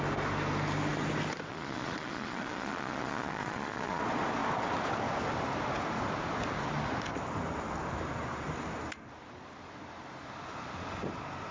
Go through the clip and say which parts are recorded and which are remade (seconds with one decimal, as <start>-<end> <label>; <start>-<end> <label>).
0.0-1.5 recorded; 1.5-4.0 remade; 4.0-11.5 recorded